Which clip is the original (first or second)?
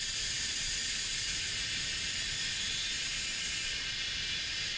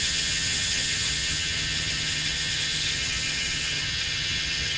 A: first